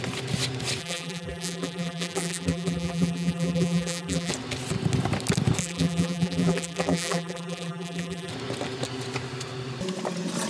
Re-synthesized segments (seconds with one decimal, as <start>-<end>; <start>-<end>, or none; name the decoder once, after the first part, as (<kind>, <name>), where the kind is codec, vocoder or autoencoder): 0.8-4.3 (vocoder, BigVGAN v2); 5.6-8.3